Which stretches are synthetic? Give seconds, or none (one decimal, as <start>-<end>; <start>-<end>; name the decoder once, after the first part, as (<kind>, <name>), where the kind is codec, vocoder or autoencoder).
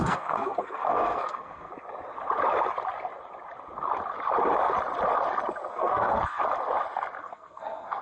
0.0-1.7 (codec, SNAC); 5.7-6.4; 7.2-8.0